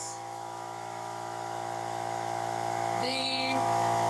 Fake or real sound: fake